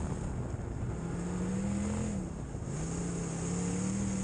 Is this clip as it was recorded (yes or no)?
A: yes